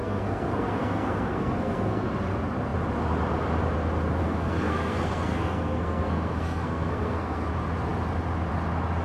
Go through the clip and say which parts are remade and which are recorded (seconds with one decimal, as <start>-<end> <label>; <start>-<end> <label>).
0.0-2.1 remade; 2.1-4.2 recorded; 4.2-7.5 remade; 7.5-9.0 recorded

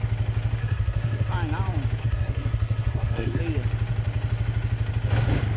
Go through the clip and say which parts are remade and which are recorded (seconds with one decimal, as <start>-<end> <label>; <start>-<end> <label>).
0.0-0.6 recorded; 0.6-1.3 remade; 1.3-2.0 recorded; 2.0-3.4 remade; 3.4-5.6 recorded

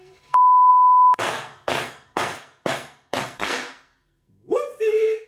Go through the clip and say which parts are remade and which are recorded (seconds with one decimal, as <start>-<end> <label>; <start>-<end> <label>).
0.0-5.3 remade

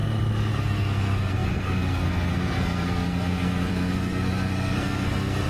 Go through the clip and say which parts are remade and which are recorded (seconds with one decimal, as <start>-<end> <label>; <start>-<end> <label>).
0.0-0.5 recorded; 0.5-5.5 remade

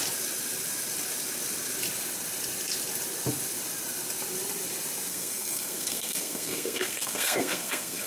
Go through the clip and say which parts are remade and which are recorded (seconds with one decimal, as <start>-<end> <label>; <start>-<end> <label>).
0.0-5.1 recorded; 5.1-8.1 remade